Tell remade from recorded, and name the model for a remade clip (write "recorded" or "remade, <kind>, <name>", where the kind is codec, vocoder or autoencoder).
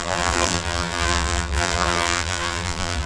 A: remade, vocoder, BigVGAN v2